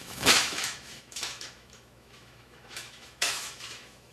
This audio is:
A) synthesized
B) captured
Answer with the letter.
A